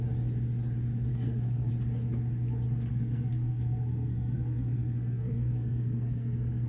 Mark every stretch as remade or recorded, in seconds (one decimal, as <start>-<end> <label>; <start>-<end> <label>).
0.0-1.1 recorded; 1.1-1.7 remade; 1.7-2.9 recorded; 2.9-6.7 remade